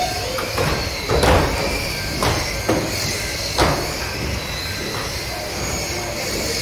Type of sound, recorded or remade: recorded